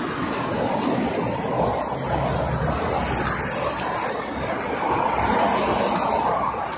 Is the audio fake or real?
real